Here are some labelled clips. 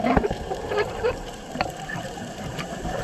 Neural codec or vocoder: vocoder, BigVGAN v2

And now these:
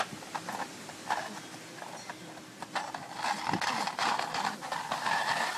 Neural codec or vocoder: none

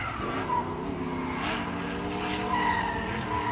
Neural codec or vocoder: none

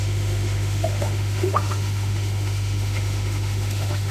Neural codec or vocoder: autoencoder, DAC-VAE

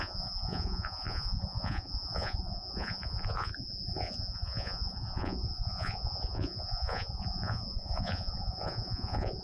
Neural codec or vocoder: vocoder, Vocos